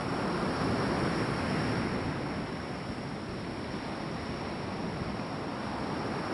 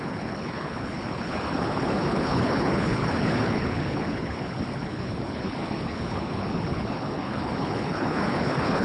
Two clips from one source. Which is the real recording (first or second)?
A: first